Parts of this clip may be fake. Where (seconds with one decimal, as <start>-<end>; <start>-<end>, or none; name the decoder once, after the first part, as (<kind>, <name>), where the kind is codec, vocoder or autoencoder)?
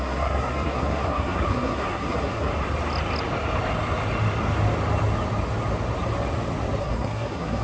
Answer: 0.0-2.5 (codec, SNAC); 6.8-7.6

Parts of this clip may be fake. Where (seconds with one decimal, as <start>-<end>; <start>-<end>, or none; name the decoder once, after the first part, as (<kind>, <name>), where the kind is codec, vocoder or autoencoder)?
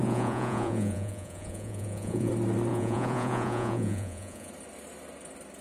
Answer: 0.0-2.3 (vocoder, Vocos); 2.7-4.5